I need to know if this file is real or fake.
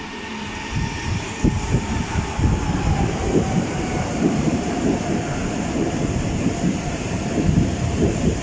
fake